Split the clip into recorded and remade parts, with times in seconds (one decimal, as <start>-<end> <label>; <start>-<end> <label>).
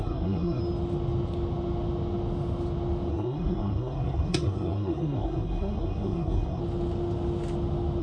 0.0-0.6 remade; 0.6-3.1 recorded; 3.1-6.6 remade; 6.6-8.0 recorded